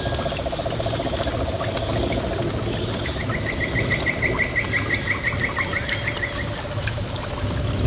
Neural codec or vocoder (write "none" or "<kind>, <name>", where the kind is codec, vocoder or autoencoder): none